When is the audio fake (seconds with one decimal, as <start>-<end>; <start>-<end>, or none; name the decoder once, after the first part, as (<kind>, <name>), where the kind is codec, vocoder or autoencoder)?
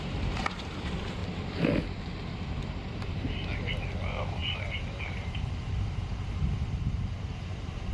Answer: 0.0-1.2 (vocoder, BigVGAN v2); 2.9-7.9